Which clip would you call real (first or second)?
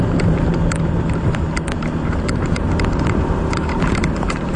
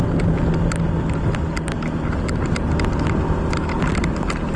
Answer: second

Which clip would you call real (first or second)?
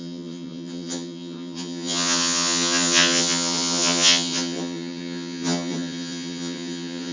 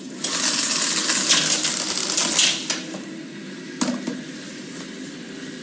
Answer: second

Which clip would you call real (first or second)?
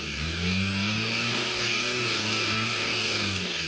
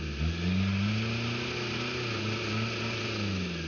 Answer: second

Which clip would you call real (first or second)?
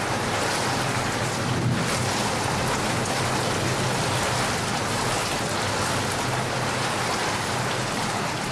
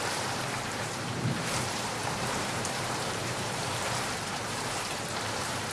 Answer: first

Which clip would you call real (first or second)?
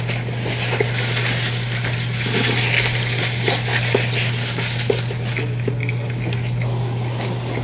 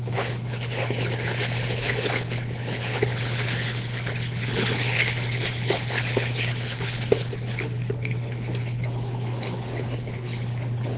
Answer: first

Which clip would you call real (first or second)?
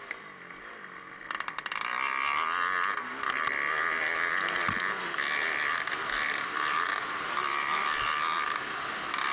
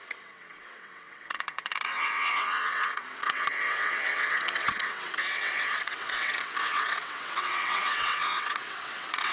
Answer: first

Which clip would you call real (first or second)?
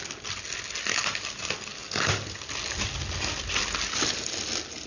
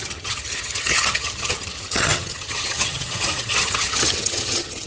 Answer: first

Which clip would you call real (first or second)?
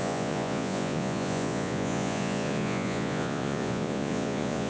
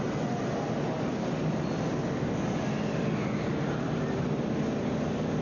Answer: second